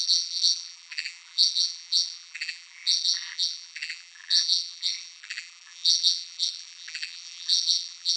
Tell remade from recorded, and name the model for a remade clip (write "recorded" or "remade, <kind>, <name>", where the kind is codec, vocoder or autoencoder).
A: remade, vocoder, BigVGAN v2